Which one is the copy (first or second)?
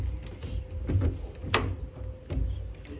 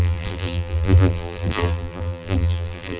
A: second